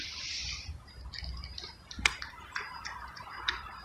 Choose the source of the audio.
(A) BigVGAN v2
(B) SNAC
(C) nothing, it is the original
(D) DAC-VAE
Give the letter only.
A